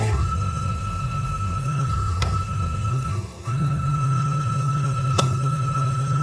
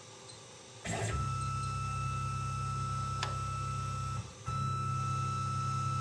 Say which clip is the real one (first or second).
second